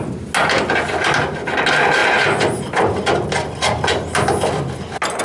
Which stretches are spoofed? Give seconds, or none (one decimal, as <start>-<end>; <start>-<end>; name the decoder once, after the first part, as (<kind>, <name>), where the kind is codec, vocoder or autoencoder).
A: none